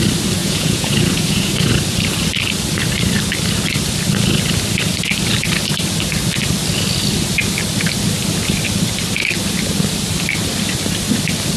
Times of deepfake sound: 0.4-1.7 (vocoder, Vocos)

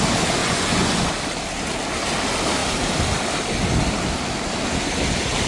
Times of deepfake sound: 0.4-1.1 (vocoder, Vocos)